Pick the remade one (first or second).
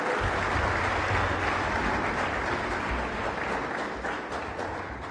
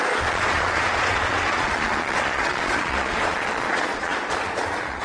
second